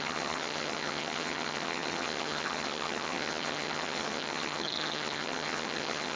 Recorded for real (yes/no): no